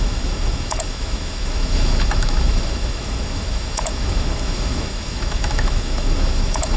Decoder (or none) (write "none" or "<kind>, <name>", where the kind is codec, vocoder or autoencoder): autoencoder, DAC-VAE